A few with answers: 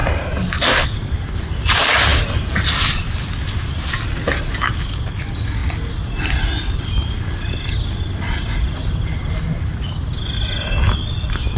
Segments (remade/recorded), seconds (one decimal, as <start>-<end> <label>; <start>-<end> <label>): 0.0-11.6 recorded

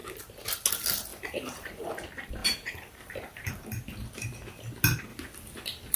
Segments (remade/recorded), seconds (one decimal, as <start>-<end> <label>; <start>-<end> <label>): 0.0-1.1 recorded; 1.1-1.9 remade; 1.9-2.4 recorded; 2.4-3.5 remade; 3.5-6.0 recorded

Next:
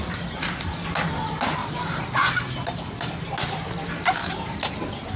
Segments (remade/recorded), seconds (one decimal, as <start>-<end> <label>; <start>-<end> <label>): 0.0-1.6 recorded; 1.6-3.2 remade; 3.2-4.0 recorded; 4.0-4.8 remade; 4.8-5.2 recorded

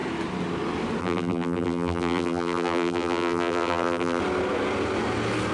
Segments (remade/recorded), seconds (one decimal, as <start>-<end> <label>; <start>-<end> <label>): 0.0-1.0 recorded; 1.0-4.2 remade; 4.2-5.5 recorded

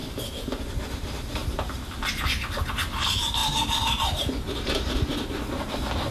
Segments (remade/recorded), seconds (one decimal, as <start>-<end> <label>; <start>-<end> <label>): 0.0-6.1 recorded

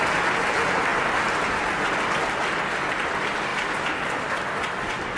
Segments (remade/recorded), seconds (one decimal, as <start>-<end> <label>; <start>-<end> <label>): 0.0-5.2 recorded